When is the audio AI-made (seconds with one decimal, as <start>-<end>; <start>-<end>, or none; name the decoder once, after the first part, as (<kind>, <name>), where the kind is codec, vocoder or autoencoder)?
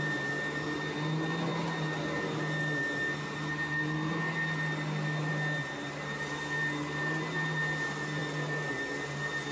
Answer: none